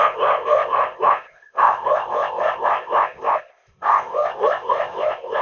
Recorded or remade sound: remade